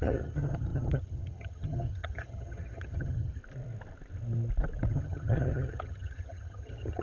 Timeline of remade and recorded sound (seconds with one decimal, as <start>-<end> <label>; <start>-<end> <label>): 0.0-3.4 remade; 3.4-4.9 recorded; 4.9-7.0 remade